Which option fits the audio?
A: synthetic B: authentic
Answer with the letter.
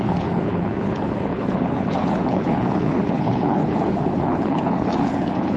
A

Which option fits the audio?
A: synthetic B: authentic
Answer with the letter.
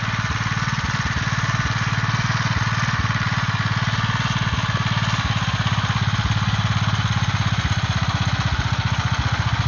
B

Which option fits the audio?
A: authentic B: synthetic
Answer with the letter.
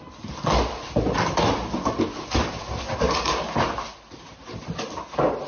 A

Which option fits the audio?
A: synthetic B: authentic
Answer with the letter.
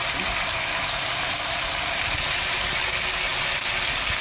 B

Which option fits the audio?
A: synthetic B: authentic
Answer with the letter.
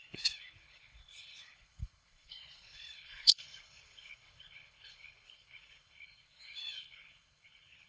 A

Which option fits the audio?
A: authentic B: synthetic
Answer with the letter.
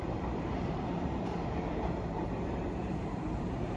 B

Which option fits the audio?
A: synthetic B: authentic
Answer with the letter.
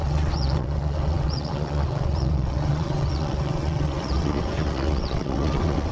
A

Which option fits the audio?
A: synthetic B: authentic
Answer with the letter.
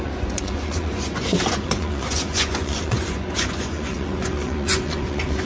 A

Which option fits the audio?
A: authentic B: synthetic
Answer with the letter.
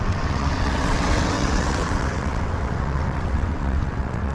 B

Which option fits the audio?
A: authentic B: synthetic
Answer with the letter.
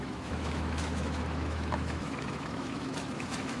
B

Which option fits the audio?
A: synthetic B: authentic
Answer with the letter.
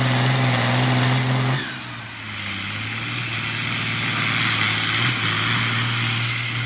B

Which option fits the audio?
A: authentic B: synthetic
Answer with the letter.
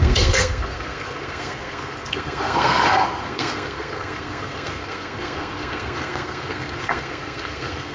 B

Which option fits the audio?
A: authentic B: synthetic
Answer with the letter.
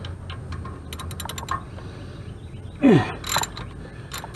A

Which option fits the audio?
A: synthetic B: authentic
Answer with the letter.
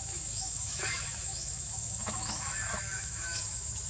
A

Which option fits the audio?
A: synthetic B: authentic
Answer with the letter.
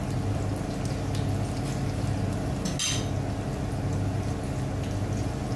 B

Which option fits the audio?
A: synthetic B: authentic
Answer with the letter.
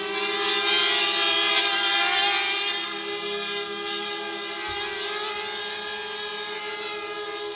B